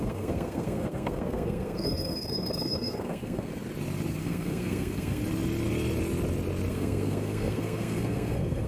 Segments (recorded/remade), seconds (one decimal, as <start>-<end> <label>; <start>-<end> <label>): 0.0-3.5 remade; 3.5-4.1 recorded; 4.1-5.2 remade; 5.2-6.7 recorded; 6.7-8.7 remade